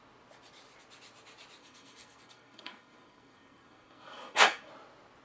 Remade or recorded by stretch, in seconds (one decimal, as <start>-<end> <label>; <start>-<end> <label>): 0.0-1.6 recorded; 1.6-4.7 remade; 4.7-5.2 recorded